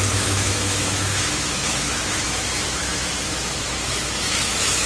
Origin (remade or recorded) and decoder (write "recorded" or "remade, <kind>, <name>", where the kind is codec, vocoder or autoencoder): remade, autoencoder, DAC-VAE